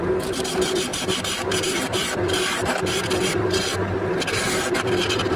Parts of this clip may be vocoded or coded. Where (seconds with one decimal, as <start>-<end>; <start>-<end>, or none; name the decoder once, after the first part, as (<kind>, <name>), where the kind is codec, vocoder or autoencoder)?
0.0-3.7 (vocoder, BigVGAN v2); 4.3-5.4